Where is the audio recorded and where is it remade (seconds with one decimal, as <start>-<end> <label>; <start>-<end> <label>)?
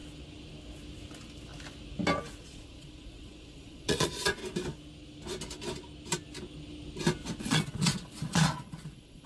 0.0-2.4 recorded; 2.4-4.4 remade; 4.4-7.4 recorded; 7.4-9.3 remade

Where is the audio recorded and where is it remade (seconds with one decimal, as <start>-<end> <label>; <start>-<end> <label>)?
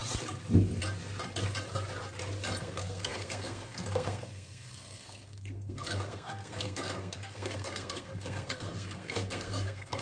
0.0-2.6 recorded; 2.6-10.0 remade